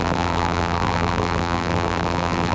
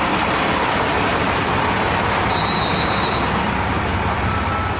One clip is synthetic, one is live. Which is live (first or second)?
second